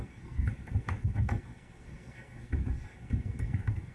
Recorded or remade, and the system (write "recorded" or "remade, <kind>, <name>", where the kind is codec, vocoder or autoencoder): remade, codec, SNAC